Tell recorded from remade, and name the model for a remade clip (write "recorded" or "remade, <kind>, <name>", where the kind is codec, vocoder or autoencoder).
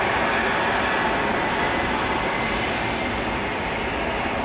recorded